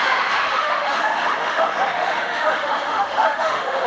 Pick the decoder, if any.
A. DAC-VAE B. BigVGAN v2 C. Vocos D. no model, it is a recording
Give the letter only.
A